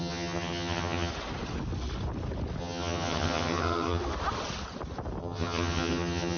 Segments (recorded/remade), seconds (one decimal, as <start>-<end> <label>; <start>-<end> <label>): 0.0-1.1 remade; 1.1-2.6 recorded; 2.6-4.0 remade; 4.0-5.2 recorded; 5.2-6.4 remade